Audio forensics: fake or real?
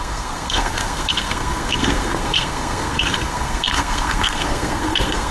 fake